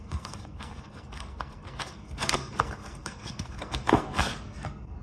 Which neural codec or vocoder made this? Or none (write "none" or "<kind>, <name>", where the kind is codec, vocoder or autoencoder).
codec, SNAC